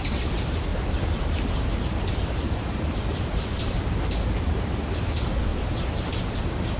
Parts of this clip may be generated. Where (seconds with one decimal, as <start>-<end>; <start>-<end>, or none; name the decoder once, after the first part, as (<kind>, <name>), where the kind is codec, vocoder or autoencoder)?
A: none